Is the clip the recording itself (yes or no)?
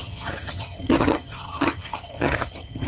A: no